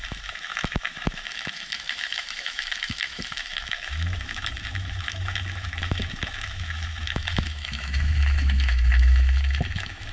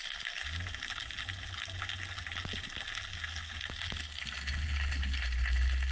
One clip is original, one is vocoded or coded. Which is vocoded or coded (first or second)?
first